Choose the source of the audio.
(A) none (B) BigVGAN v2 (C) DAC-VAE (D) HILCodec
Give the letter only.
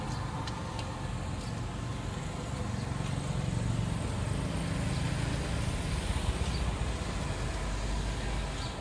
A